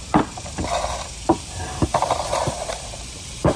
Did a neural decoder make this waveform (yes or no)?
yes